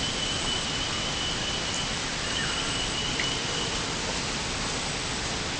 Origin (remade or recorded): recorded